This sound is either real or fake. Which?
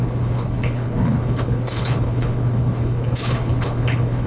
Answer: fake